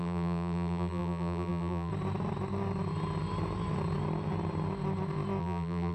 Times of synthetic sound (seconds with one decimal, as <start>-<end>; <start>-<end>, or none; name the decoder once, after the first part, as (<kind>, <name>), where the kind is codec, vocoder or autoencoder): 0.0-1.9 (vocoder, BigVGAN v2); 5.4-5.9